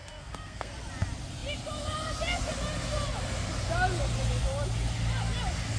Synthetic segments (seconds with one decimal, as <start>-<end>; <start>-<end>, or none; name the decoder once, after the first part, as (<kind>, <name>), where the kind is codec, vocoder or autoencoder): 0.0-0.7 (codec, SNAC)